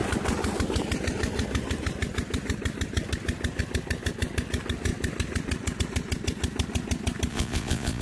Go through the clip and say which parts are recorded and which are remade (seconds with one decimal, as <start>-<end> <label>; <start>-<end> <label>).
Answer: 0.0-7.3 recorded; 7.3-8.0 remade